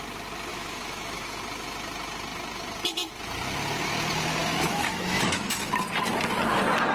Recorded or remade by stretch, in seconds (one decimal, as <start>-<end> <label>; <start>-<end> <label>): 0.0-0.5 recorded; 0.5-1.4 remade; 1.4-4.4 recorded; 4.4-5.7 remade; 5.7-6.9 recorded